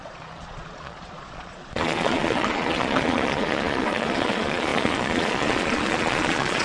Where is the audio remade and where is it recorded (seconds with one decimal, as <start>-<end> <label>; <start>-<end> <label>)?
0.0-6.6 remade